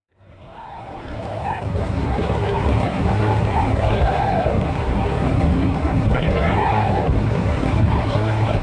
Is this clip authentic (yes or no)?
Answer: no